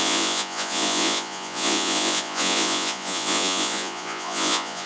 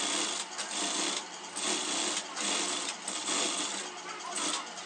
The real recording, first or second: second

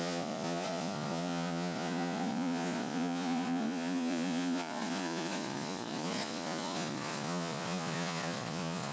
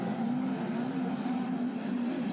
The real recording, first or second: second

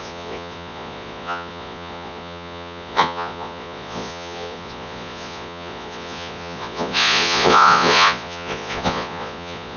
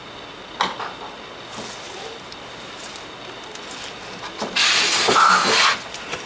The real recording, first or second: second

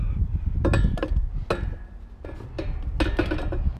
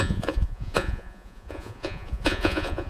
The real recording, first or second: first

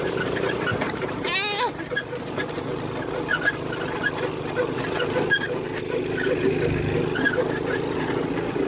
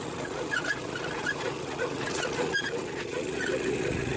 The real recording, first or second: first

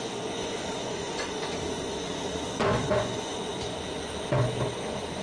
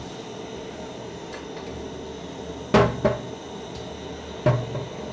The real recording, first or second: second